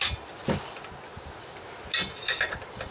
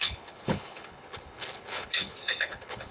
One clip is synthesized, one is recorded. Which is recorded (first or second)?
first